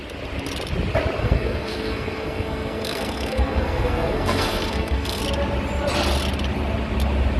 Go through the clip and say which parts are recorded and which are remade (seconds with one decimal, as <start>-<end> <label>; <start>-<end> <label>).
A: 0.0-1.2 recorded; 1.2-5.2 remade; 5.2-7.4 recorded